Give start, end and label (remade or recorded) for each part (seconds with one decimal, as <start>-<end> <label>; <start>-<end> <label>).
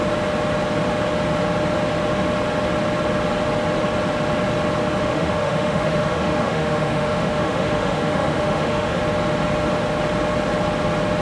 0.0-5.0 recorded; 5.0-9.0 remade; 9.0-11.2 recorded